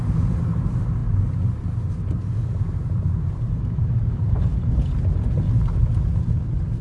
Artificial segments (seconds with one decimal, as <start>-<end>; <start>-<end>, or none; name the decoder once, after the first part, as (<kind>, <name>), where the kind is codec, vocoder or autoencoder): 0.0-1.0 (vocoder, BigVGAN v2); 2.5-4.5; 5.8-6.8